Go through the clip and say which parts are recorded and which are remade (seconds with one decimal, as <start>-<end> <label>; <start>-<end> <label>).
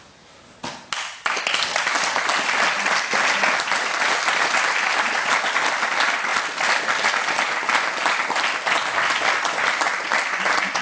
0.0-10.8 recorded